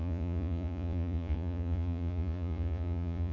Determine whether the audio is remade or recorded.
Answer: remade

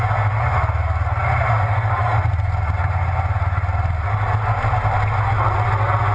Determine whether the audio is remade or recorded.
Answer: recorded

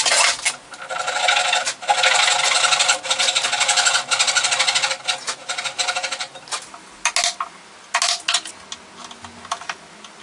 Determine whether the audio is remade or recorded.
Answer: recorded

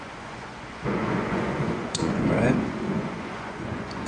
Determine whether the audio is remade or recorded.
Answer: remade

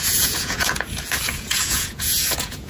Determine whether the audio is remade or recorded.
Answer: remade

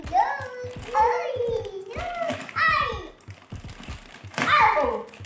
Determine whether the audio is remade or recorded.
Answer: recorded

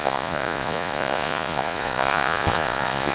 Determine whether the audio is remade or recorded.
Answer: remade